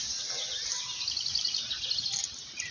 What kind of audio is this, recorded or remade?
recorded